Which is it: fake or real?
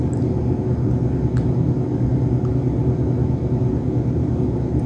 real